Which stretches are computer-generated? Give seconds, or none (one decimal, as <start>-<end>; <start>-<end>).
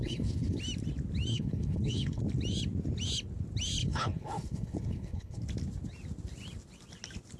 0.0-0.6; 1.3-2.2; 3.8-5.4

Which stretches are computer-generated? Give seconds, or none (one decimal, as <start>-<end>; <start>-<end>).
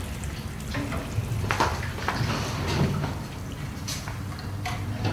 none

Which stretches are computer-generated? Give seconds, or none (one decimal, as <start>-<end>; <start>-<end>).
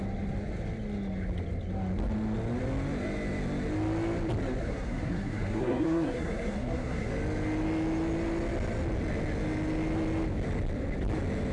4.6-7.1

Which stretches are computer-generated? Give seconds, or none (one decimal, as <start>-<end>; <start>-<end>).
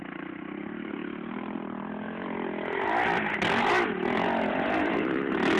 none